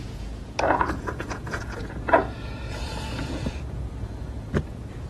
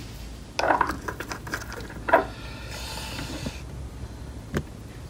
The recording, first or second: second